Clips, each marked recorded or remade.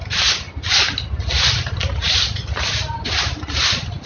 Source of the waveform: recorded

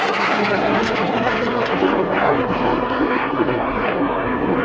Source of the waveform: remade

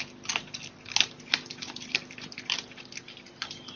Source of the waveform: recorded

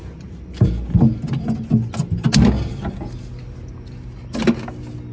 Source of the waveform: recorded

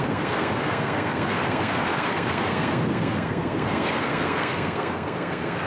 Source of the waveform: remade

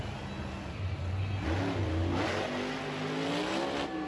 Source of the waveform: recorded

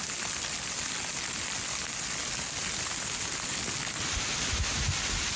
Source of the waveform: recorded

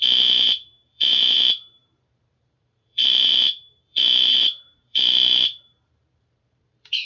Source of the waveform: remade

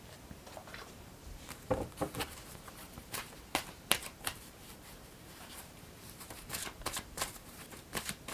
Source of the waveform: remade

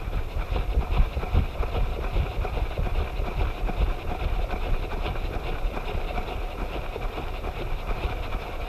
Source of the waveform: recorded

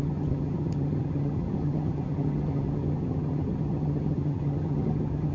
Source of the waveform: remade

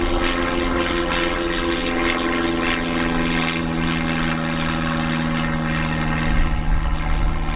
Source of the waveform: recorded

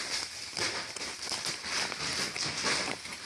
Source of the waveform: recorded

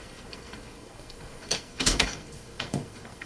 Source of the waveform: remade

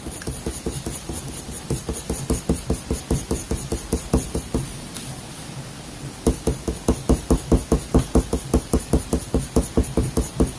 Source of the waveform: recorded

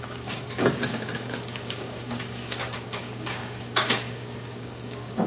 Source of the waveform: remade